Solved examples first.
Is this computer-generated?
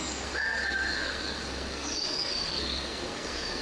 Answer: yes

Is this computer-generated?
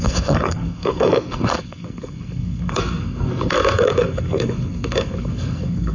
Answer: yes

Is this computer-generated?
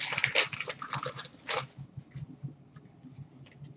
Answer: no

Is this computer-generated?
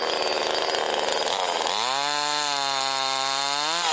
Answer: no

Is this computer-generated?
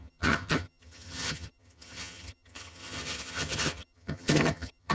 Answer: yes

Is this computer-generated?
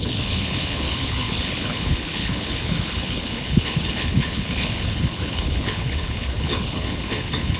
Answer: yes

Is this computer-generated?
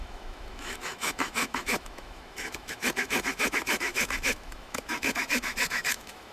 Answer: yes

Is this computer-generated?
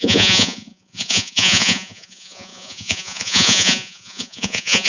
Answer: yes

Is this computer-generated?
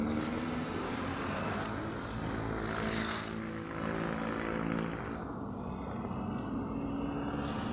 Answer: no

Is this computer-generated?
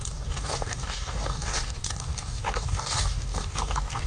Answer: yes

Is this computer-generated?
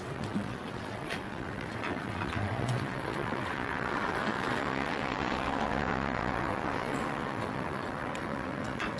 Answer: yes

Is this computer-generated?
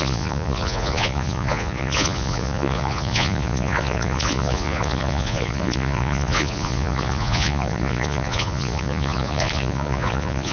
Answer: yes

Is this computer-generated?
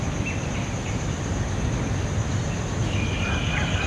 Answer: no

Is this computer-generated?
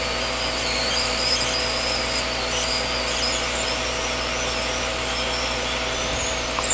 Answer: no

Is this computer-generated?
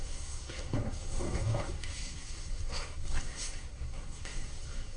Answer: yes